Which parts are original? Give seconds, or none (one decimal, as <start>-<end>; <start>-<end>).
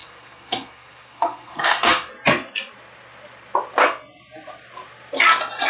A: 2.1-5.7